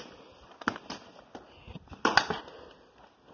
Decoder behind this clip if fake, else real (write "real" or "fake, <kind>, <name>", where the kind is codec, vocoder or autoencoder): real